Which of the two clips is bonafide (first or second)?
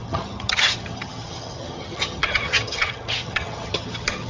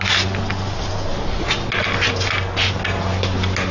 second